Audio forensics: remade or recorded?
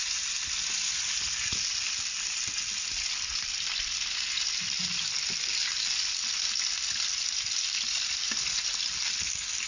recorded